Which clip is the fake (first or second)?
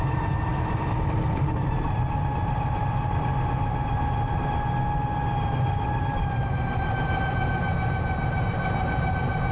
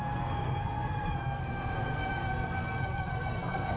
second